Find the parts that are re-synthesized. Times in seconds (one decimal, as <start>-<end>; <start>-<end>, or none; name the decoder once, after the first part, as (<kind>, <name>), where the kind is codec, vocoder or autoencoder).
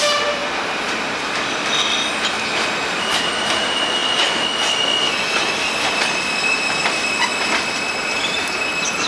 0.0-0.4 (vocoder, BigVGAN v2); 3.0-4.0; 6.4-7.3; 8.0-9.1